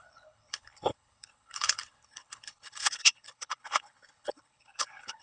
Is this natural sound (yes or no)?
no